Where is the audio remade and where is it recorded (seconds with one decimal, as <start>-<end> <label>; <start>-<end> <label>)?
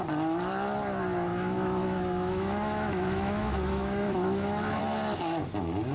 0.0-1.3 recorded; 1.3-4.8 remade; 4.8-5.9 recorded